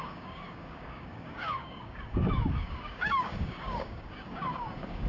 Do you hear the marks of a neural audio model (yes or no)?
yes